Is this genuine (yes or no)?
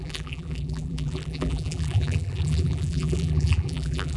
no